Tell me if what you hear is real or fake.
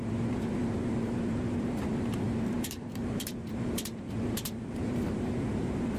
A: fake